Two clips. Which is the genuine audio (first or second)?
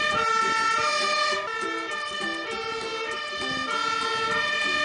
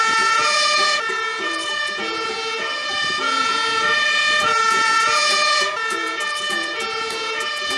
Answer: first